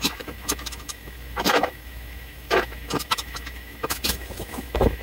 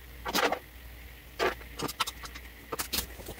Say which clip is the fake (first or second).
first